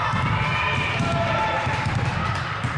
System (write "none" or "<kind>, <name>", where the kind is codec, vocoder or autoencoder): none